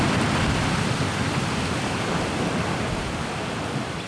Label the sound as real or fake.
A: real